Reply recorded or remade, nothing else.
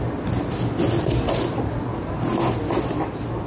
recorded